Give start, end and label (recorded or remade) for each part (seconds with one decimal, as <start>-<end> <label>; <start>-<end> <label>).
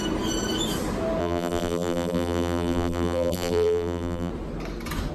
0.0-1.2 recorded; 1.2-4.3 remade; 4.3-5.1 recorded